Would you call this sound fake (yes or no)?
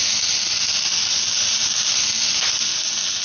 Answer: no